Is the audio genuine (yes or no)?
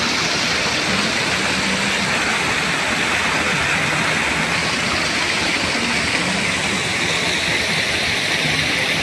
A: yes